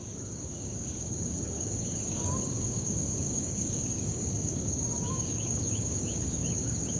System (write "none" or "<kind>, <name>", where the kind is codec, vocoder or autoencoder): codec, DAC